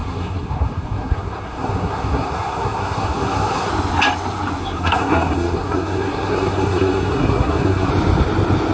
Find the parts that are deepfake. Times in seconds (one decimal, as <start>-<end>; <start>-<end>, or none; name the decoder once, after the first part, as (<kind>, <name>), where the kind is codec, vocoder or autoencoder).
0.0-3.7 (codec, SNAC); 4.6-7.9